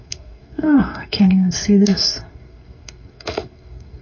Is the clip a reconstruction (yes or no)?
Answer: yes